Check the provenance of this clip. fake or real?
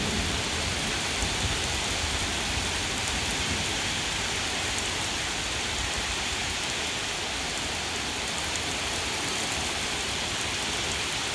fake